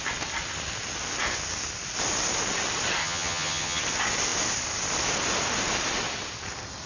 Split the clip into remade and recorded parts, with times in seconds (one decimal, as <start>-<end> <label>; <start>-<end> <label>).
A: 0.0-3.0 recorded; 3.0-3.8 remade; 3.8-6.9 recorded